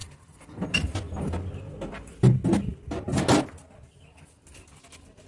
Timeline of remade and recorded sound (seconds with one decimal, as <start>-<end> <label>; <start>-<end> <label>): 0.0-5.3 recorded